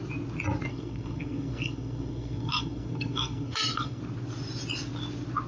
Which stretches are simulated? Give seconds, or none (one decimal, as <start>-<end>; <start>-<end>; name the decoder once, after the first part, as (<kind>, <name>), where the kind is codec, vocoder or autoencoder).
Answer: 0.7-4.0 (codec, SNAC)